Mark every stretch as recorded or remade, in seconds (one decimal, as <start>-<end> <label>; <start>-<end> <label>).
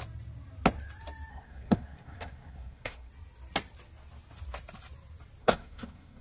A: 0.0-1.3 recorded; 1.3-3.1 remade; 3.1-5.4 recorded; 5.4-6.2 remade